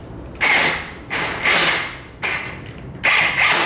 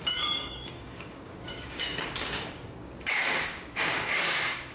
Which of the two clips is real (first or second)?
first